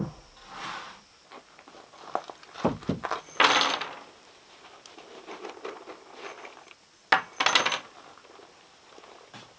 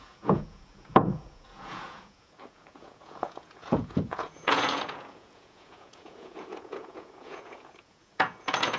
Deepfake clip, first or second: second